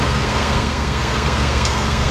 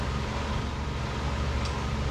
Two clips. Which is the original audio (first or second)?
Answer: second